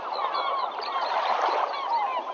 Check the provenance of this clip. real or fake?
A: real